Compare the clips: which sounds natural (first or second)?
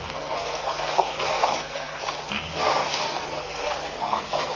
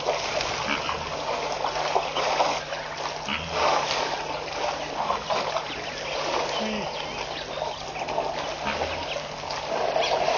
second